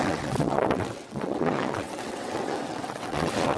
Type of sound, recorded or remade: remade